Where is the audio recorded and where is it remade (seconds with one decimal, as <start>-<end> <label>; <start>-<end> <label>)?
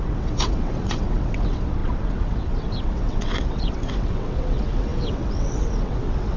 0.0-6.4 remade